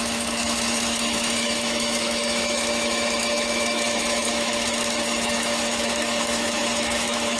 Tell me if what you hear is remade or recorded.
remade